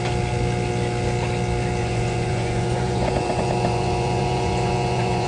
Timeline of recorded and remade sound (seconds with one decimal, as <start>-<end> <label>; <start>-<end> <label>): 0.0-1.8 recorded; 1.8-5.3 remade